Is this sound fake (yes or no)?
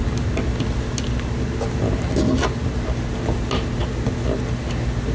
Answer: no